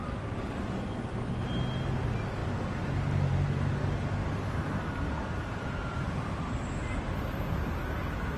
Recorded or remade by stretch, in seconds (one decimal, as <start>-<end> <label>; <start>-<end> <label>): 0.0-8.4 recorded